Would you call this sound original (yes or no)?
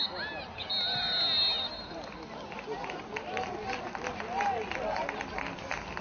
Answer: yes